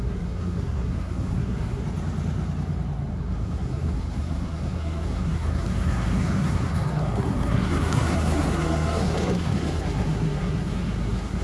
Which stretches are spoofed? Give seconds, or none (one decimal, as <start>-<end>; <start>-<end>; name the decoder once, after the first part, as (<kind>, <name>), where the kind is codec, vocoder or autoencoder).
0.0-1.8 (codec, SNAC); 3.1-11.4